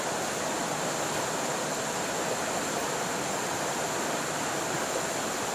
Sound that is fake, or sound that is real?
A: real